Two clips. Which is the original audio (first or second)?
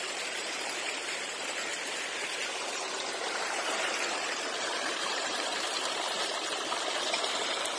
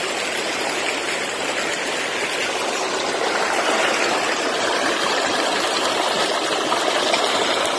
second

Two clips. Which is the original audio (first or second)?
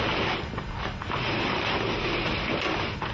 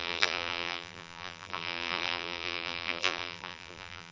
first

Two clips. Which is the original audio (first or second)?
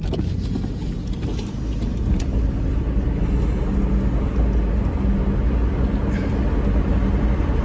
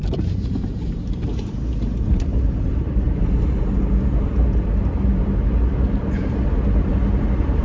first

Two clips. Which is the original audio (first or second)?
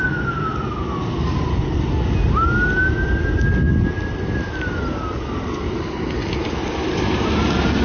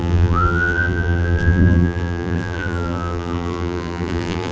first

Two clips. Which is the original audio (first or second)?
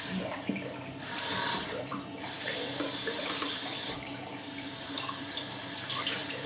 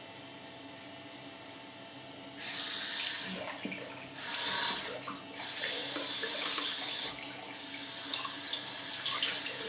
second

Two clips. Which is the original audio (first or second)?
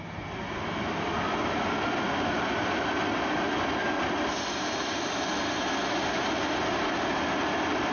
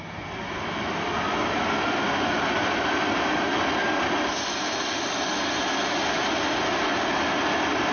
second